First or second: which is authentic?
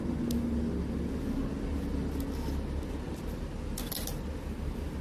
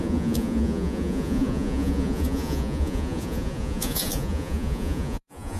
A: first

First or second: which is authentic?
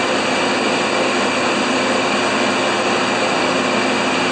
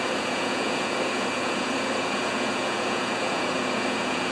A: first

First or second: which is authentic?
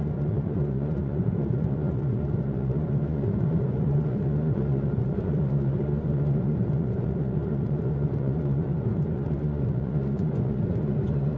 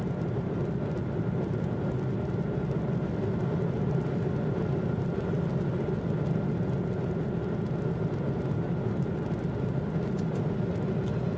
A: second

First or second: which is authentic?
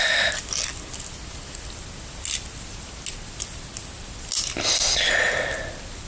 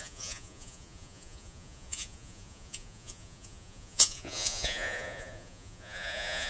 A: first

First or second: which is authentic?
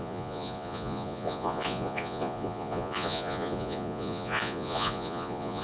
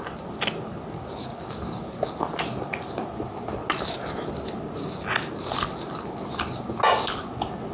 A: second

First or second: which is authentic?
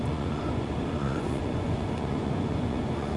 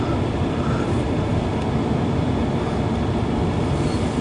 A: second